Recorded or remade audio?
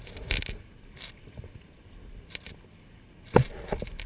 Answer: recorded